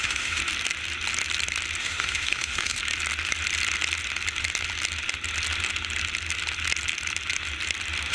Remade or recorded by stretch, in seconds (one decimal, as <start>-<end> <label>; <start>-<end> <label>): 0.0-0.4 remade; 0.4-1.8 recorded; 1.8-2.8 remade; 2.8-8.1 recorded